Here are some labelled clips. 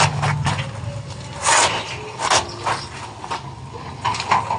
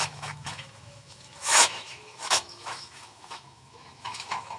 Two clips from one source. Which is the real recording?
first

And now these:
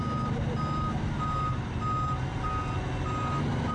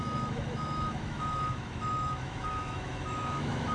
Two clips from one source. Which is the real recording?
first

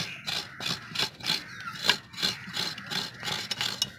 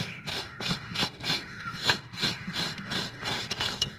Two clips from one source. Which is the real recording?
first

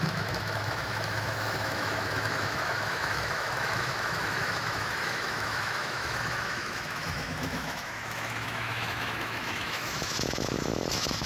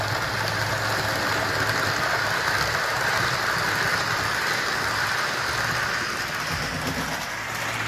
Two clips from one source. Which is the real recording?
second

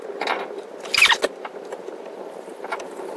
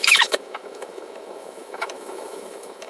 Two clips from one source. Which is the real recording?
first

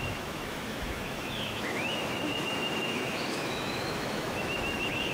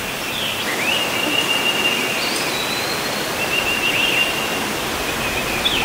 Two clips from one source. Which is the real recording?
second